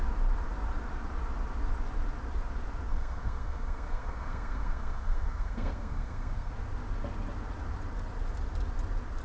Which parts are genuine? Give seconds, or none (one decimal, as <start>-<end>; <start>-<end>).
0.0-2.9; 6.5-9.2